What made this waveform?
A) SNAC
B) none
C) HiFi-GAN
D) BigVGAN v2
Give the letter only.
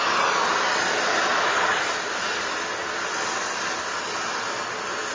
B